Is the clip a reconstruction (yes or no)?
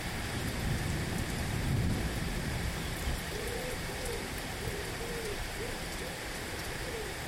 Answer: yes